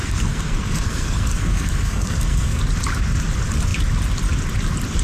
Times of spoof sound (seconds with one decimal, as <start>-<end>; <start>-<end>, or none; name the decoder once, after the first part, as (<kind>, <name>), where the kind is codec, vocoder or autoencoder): 0.0-2.6 (codec, SNAC)